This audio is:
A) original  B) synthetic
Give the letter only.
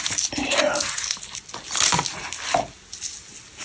A